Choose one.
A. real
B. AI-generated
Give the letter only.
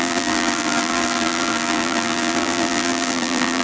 B